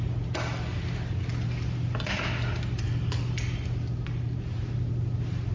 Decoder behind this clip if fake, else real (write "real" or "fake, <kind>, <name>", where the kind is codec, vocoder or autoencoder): real